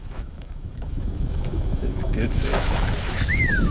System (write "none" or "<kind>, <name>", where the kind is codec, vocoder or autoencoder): autoencoder, DAC-VAE